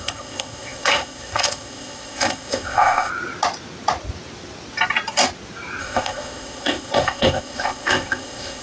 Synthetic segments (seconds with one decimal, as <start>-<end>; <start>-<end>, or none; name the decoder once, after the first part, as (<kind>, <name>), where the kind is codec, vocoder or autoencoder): 0.0-3.1 (codec, ZipCodec); 5.8-8.6

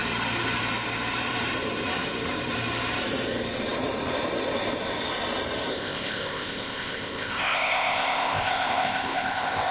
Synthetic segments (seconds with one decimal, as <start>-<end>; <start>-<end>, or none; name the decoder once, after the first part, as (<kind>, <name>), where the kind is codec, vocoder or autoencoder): 5.7-9.7 (codec, ZipCodec)

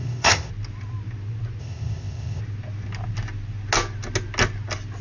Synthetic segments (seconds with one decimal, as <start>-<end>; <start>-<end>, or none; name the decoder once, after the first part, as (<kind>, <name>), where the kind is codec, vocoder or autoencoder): 0.0-0.5 (codec, ZipCodec); 1.6-2.4